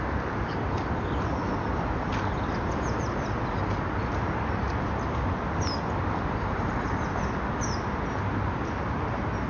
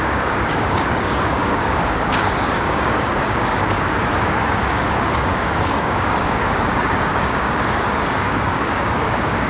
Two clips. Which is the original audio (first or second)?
first